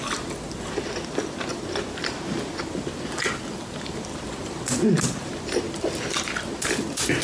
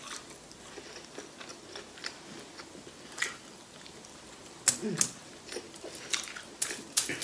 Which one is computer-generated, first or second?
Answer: first